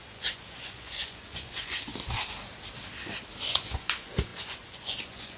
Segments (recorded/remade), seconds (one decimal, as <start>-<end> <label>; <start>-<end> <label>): 0.0-1.9 remade; 1.9-3.4 recorded; 3.4-5.4 remade